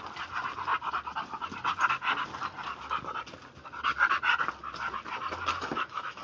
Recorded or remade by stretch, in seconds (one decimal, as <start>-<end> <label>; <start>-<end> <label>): 0.0-5.5 recorded; 5.5-6.2 remade